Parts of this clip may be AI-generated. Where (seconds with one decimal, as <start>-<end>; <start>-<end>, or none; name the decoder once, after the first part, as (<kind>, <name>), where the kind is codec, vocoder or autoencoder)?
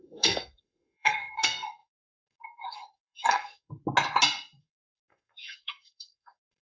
0.0-3.8 (codec, SNAC); 4.6-6.7